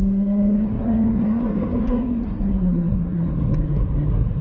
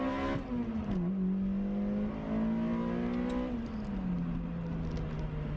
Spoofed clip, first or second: first